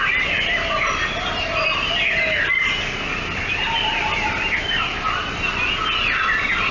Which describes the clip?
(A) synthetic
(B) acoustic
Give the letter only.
B